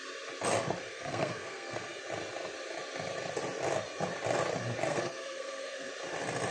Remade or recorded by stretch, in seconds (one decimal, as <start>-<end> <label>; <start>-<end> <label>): 0.0-0.9 recorded; 0.9-2.0 remade; 2.0-4.9 recorded; 4.9-5.9 remade; 5.9-6.5 recorded